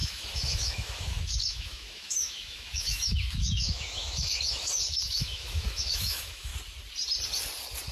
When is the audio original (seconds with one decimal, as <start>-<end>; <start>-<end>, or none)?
6.5-7.9